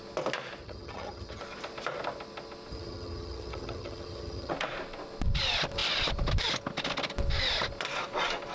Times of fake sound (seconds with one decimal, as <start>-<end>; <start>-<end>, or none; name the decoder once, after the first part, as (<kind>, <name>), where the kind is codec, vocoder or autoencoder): 0.6-1.4 (vocoder, HiFi-GAN); 2.7-4.5